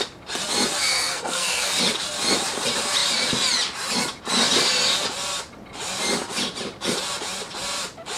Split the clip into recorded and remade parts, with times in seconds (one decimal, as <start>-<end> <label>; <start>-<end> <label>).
0.0-0.8 recorded; 0.8-1.8 remade; 1.8-8.2 recorded